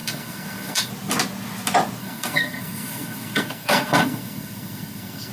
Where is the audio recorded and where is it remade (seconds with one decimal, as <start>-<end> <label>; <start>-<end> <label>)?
0.0-0.9 remade; 0.9-2.0 recorded; 2.0-5.3 remade